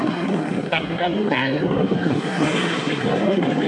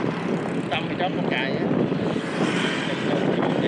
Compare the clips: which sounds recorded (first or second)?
second